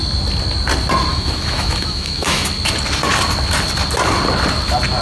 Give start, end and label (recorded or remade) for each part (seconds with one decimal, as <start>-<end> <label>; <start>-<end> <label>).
0.0-1.1 recorded; 1.1-2.5 remade; 2.5-5.0 recorded